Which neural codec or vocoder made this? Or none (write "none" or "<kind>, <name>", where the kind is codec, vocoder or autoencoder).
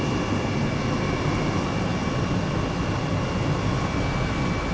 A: none